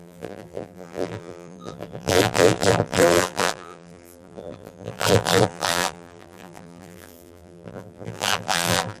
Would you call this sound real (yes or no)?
no